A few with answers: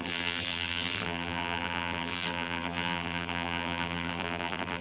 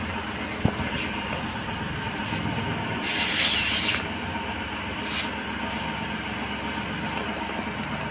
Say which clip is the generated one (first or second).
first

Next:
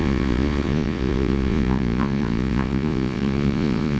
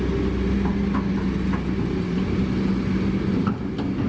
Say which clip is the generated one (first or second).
first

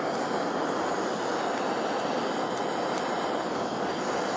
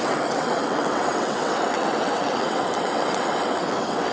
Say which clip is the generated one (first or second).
second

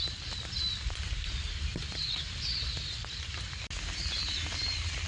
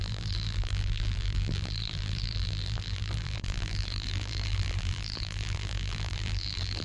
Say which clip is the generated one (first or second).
second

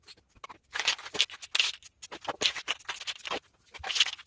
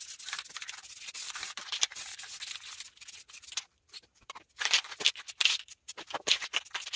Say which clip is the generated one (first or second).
second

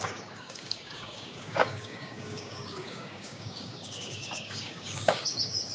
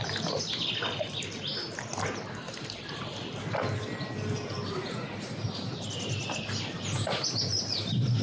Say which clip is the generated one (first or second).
first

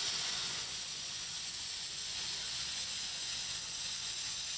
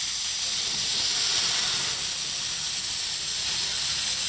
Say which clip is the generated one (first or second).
first